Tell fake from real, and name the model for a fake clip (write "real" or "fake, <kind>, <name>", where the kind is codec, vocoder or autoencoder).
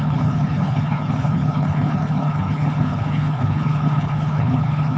fake, codec, HILCodec